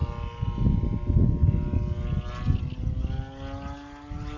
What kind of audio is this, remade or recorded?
recorded